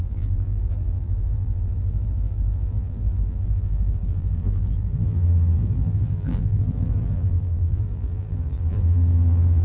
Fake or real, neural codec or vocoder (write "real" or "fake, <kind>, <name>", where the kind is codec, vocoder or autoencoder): fake, vocoder, BigVGAN v2